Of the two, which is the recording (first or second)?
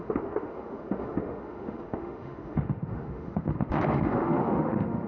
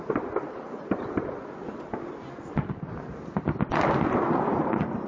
second